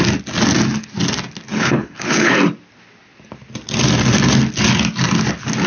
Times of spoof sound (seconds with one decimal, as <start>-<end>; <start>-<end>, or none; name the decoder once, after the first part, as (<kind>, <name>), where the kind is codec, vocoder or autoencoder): 1.5-2.3 (codec, HILCodec)